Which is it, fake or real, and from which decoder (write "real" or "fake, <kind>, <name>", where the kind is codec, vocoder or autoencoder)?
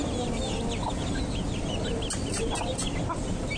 real